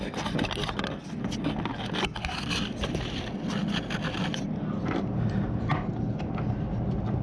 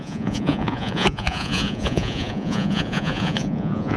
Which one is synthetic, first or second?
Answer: second